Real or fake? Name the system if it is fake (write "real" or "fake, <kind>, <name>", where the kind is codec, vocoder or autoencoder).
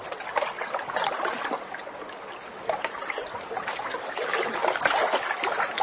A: real